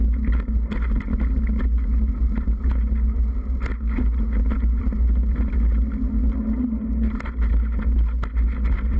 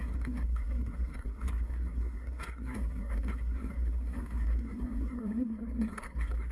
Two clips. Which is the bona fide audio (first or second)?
first